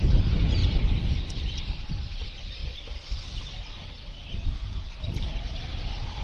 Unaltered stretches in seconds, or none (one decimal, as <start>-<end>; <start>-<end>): 0.0-6.2